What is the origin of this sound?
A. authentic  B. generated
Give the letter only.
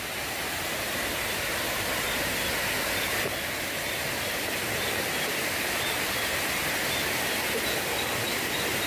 A